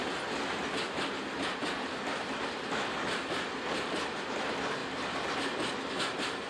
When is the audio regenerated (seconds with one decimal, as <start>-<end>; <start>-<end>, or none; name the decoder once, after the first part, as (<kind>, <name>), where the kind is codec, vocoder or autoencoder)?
none